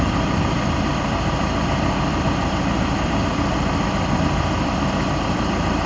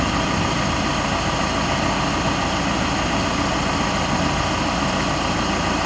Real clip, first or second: second